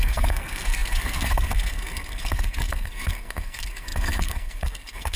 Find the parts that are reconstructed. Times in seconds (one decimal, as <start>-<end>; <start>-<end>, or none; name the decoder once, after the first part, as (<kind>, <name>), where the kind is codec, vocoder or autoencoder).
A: 0.0-5.2 (codec, SNAC)